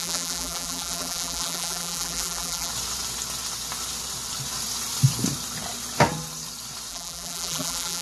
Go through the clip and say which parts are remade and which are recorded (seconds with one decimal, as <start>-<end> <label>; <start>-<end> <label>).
0.0-2.7 remade; 2.7-6.9 recorded; 6.9-8.0 remade